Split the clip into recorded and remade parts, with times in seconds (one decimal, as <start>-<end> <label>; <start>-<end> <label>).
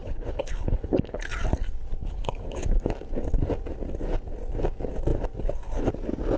0.0-1.2 remade; 1.2-2.0 recorded; 2.0-2.8 remade; 2.8-6.4 recorded